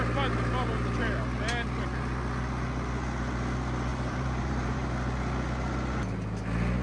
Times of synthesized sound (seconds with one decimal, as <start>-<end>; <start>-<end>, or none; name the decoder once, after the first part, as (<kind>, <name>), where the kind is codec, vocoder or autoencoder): 3.9-4.9 (vocoder, BigVGAN v2)